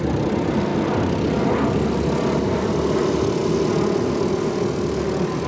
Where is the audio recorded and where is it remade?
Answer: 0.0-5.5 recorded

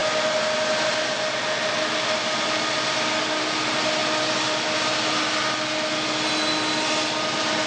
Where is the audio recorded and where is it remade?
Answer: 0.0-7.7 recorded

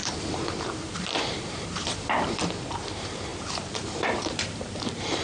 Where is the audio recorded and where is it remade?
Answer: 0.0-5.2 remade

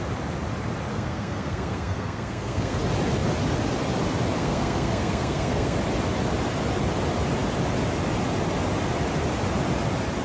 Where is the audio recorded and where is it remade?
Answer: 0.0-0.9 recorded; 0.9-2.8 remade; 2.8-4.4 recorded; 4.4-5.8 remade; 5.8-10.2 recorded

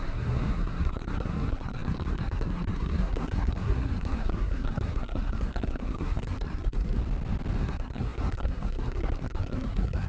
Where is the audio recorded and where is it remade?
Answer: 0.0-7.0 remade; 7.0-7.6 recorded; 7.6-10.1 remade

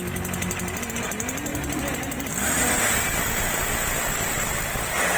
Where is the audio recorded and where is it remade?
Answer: 0.0-5.2 recorded

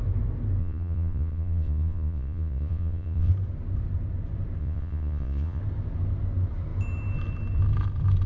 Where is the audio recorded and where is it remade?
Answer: 0.0-0.6 recorded; 0.6-3.3 remade; 3.3-4.6 recorded; 4.6-5.6 remade; 5.6-8.3 recorded

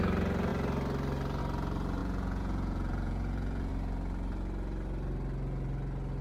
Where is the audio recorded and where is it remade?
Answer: 0.0-2.0 recorded; 2.0-3.7 remade; 3.7-6.2 recorded